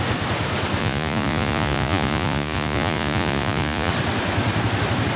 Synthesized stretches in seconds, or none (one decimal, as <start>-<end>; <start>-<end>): 0.8-3.9